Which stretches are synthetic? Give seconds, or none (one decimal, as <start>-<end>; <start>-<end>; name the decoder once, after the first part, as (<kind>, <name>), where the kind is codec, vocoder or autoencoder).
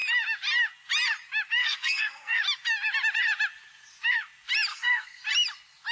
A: 1.6-2.4 (codec, SNAC); 4.7-5.2